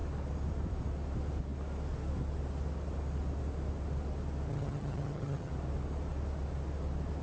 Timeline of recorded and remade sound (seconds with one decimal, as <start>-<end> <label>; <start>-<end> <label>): 0.0-4.5 recorded; 4.5-5.5 remade; 5.5-7.2 recorded